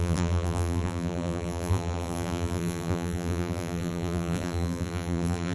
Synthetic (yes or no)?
yes